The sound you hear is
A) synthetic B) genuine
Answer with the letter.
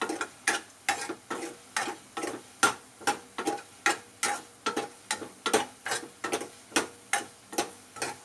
B